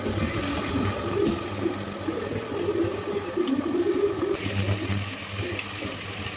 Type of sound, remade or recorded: recorded